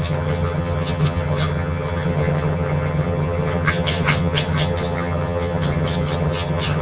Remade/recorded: remade